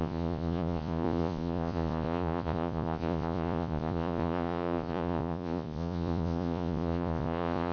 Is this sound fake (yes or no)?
yes